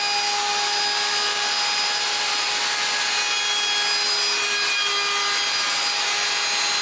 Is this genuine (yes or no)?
yes